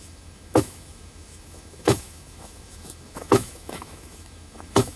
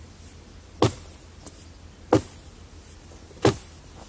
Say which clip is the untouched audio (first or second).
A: second